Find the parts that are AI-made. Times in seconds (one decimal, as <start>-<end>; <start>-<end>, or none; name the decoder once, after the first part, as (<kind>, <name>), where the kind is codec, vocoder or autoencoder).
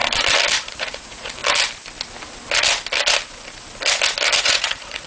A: 0.7-1.4 (vocoder, Vocos); 4.4-5.1